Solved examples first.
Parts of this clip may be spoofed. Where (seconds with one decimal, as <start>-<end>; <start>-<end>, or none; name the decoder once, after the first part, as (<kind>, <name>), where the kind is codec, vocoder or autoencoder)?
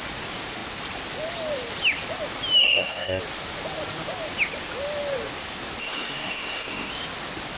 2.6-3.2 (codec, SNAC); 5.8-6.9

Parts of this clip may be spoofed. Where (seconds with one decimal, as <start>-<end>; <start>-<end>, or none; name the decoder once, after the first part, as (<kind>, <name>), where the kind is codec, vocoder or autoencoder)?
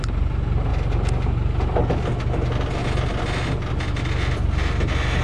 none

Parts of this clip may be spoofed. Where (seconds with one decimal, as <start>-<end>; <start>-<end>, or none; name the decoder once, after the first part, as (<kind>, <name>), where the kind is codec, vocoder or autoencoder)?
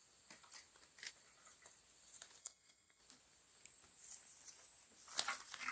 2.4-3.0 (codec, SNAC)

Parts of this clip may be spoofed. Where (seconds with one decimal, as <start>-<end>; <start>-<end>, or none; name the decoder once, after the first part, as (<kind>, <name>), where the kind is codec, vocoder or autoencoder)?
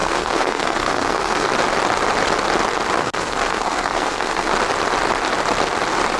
0.0-1.5 (codec, SNAC); 3.0-4.5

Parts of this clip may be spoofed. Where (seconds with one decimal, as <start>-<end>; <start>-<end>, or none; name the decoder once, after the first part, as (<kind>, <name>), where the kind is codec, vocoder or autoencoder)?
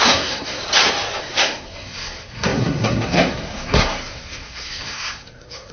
0.0-0.6 (codec, SNAC); 1.2-5.7